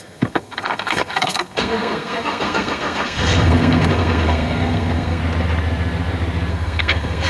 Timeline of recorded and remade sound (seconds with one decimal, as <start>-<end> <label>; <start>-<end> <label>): 0.0-5.2 remade; 5.2-6.5 recorded; 6.5-7.3 remade